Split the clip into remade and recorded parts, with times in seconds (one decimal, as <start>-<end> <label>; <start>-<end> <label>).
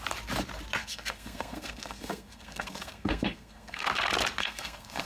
0.0-0.8 recorded; 0.8-3.9 remade; 3.9-4.4 recorded; 4.4-5.1 remade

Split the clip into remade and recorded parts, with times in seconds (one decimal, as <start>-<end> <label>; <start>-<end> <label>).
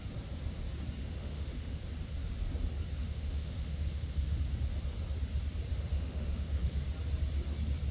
0.0-1.0 recorded; 1.0-1.8 remade; 1.8-3.0 recorded; 3.0-4.4 remade; 4.4-5.7 recorded; 5.7-6.7 remade; 6.7-7.9 recorded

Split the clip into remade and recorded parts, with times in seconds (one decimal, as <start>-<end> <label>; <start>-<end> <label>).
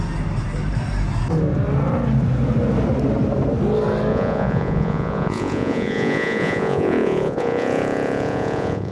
0.0-4.1 recorded; 4.1-8.9 remade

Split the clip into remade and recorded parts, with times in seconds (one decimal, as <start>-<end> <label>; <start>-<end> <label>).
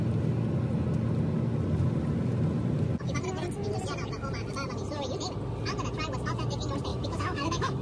0.0-6.9 recorded; 6.9-7.8 remade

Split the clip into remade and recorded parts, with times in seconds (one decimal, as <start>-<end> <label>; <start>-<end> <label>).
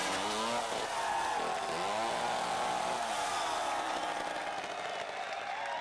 0.0-5.8 recorded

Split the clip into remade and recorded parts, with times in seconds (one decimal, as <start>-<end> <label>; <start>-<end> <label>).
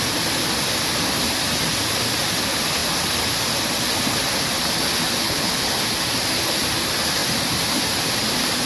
0.0-5.2 recorded; 5.2-5.7 remade; 5.7-8.7 recorded